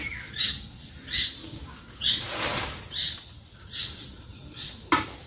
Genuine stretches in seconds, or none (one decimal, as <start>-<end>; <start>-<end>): 0.0-1.4; 2.1-5.3